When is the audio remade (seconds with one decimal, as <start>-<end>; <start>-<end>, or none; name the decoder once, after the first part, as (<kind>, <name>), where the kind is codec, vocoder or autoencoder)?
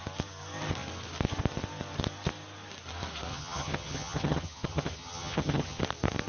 3.3-5.8 (vocoder, HiFi-GAN)